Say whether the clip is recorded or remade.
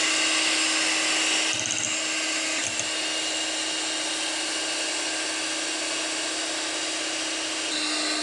recorded